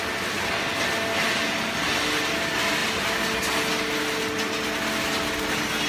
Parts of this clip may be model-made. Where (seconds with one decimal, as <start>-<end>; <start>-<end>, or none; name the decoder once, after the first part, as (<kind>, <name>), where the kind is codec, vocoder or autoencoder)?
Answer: none